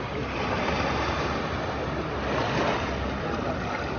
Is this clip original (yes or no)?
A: yes